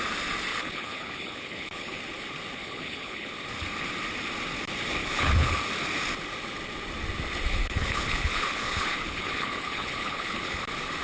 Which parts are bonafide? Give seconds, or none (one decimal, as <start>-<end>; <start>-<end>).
0.0-0.5; 2.0-2.6; 3.3-5.0; 5.6-7.6; 10.6-11.0